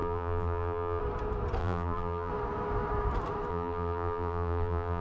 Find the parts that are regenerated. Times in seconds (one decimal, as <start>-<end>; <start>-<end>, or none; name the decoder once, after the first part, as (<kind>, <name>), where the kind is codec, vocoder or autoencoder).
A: 0.0-1.0 (vocoder, BigVGAN v2); 1.6-2.3; 3.5-5.0